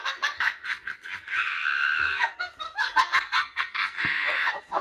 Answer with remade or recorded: remade